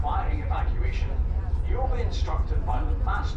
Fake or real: fake